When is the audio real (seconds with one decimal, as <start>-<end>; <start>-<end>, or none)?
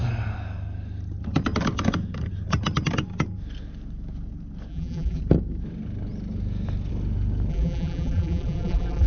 0.0-4.7; 5.2-7.5